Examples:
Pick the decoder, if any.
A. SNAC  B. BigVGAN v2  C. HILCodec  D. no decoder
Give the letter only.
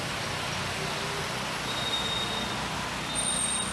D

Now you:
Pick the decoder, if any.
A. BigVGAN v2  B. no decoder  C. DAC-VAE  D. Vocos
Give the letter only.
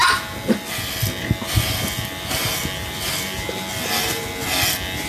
B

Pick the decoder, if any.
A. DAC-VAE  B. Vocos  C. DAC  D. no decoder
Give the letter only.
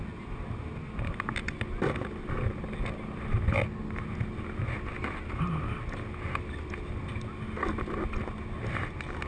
D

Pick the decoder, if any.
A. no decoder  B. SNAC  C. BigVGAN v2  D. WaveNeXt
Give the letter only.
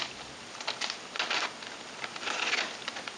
A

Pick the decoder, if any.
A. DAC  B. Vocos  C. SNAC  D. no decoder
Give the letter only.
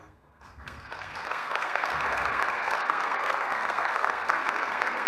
C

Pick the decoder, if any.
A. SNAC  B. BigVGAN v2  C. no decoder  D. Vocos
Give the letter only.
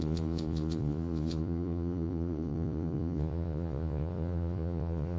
D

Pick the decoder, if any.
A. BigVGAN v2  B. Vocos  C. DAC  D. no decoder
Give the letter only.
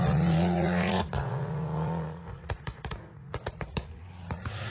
B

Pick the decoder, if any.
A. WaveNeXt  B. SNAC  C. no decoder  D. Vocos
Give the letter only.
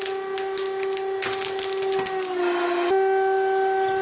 C